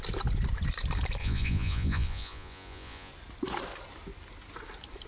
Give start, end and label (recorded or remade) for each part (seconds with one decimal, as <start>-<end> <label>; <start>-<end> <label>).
0.0-1.2 recorded; 1.2-3.1 remade; 3.1-5.1 recorded

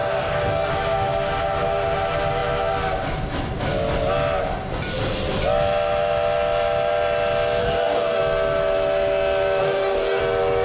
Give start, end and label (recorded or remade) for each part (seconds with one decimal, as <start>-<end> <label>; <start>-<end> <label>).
0.0-0.7 remade; 0.7-7.6 recorded; 7.6-8.2 remade; 8.2-9.6 recorded; 9.6-10.2 remade; 10.2-10.6 recorded

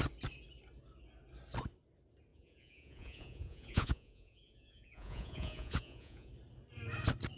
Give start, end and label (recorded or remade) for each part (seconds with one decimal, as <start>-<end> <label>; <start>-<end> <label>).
0.0-2.3 recorded; 2.3-6.3 remade; 6.3-7.4 recorded

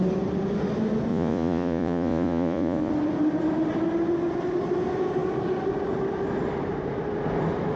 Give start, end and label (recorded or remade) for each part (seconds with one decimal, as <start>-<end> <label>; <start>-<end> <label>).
0.0-1.1 recorded; 1.1-2.9 remade; 2.9-7.8 recorded